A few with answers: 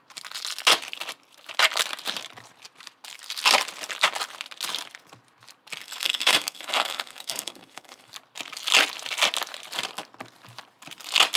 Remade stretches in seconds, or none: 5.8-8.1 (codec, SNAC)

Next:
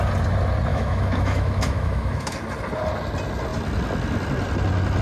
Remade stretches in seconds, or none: 0.7-2.4 (autoencoder, DAC-VAE)

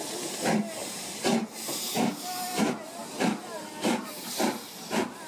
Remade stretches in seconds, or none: none